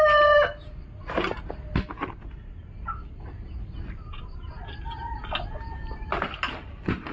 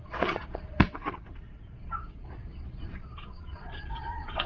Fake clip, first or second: second